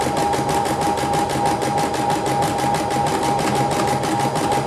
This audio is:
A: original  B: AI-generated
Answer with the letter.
A